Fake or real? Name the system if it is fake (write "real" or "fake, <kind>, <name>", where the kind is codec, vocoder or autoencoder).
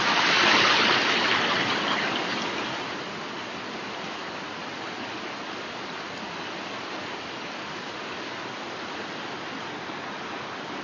real